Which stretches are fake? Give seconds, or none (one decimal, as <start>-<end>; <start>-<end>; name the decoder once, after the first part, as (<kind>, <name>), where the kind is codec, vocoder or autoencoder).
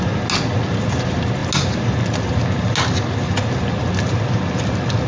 none